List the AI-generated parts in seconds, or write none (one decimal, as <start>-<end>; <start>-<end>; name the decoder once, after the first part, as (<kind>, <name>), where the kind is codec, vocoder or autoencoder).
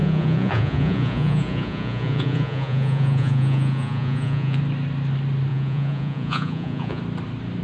0.0-4.6 (vocoder, Vocos); 5.5-7.0